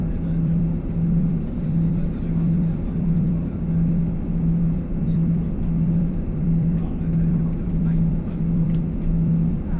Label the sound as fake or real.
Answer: fake